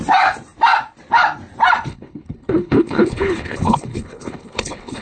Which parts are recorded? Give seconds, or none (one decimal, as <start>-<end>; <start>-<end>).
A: 0.0-1.9